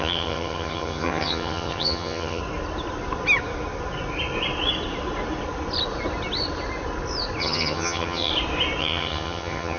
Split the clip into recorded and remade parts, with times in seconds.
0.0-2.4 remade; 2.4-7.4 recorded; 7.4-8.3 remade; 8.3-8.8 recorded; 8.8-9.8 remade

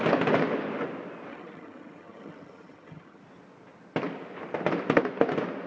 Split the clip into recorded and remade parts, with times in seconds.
0.0-1.3 recorded; 1.3-3.2 remade; 3.2-5.7 recorded

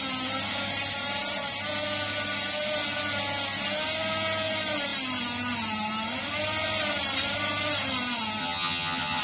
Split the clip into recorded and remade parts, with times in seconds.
0.0-8.4 recorded; 8.4-9.2 remade

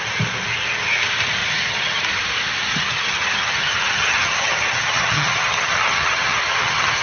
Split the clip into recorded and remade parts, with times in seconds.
0.0-1.4 recorded; 1.4-2.0 remade; 2.0-2.7 recorded; 2.7-7.0 remade

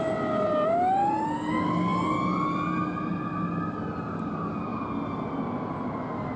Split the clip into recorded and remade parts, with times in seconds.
0.0-6.4 recorded

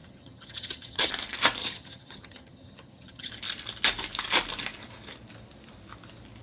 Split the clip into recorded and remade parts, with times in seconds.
0.0-1.1 remade; 1.1-1.6 recorded; 1.6-3.3 remade; 3.3-6.4 recorded

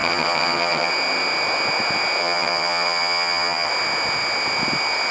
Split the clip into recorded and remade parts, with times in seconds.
0.0-0.9 remade; 0.9-2.2 recorded; 2.2-3.7 remade; 3.7-5.1 recorded

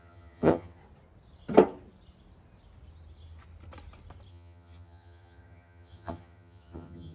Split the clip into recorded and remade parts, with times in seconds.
0.0-0.8 remade; 0.8-4.3 recorded; 4.3-7.1 remade